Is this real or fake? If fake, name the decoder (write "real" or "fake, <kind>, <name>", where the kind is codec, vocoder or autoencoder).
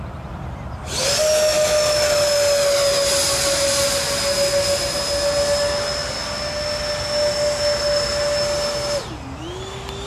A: real